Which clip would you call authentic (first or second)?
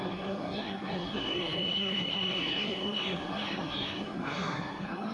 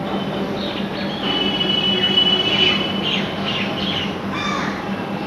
second